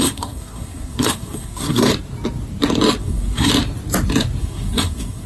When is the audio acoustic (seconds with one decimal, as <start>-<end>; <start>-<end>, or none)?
1.9-3.0; 3.5-4.4